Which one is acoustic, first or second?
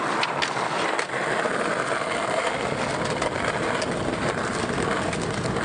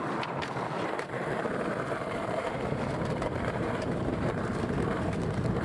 first